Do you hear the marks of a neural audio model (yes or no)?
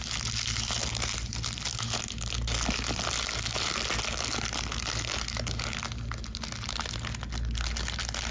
no